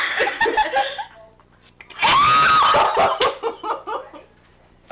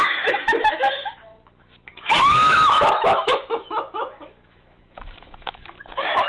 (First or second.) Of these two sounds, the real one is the first